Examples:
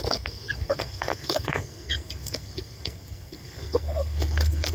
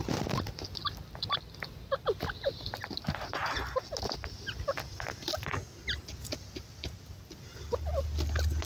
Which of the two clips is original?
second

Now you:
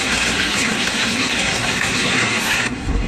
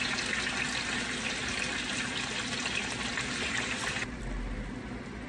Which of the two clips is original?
second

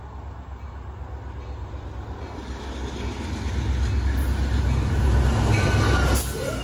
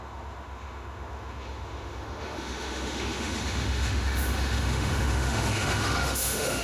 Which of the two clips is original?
first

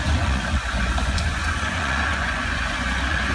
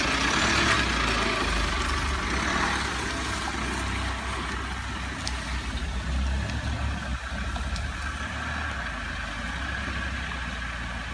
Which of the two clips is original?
second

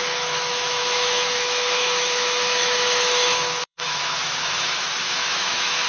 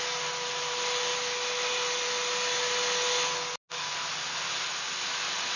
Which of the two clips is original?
second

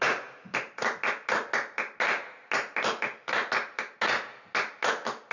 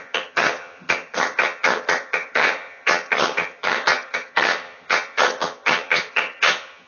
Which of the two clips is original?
first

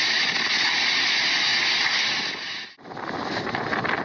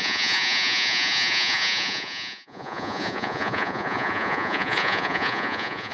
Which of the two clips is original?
first